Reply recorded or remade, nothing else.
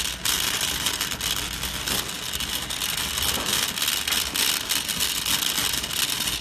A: recorded